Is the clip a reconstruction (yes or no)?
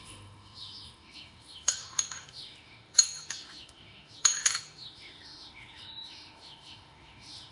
yes